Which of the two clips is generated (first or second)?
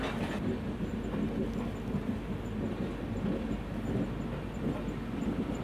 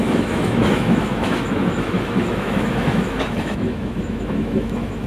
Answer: second